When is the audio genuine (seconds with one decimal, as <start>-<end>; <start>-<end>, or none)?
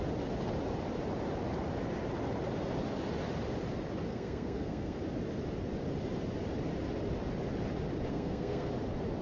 0.0-4.1; 5.0-8.1; 8.7-9.2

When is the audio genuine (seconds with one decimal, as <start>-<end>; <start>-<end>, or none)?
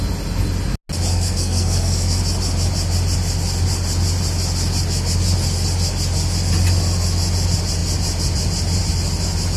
0.0-1.1; 2.2-9.6